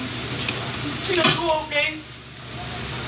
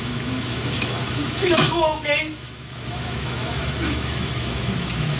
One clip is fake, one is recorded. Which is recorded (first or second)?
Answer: first